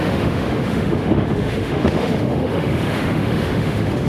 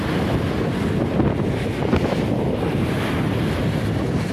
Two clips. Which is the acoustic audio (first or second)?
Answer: second